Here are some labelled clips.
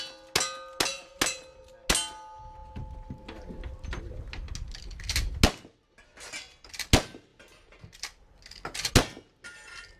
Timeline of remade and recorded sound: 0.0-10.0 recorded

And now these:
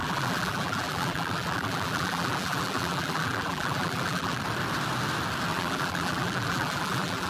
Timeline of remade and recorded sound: 0.0-4.4 remade; 4.4-5.5 recorded; 5.5-7.3 remade

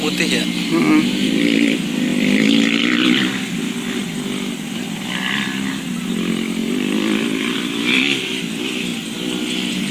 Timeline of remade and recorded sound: 0.0-2.1 recorded; 2.1-2.8 remade; 2.8-6.6 recorded; 6.6-8.4 remade; 8.4-8.9 recorded; 8.9-9.9 remade

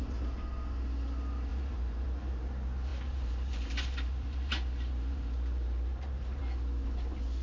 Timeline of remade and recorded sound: 0.0-1.5 recorded; 1.5-2.4 remade; 2.4-2.9 recorded; 2.9-6.4 remade; 6.4-7.4 recorded

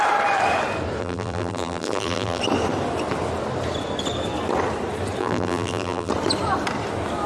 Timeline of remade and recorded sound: 0.0-1.0 recorded; 1.0-2.4 remade; 2.4-5.2 recorded; 5.2-6.1 remade; 6.1-7.3 recorded